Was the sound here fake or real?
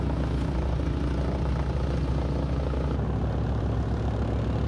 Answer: real